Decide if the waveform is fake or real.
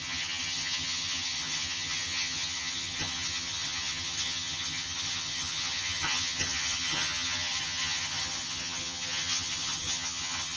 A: fake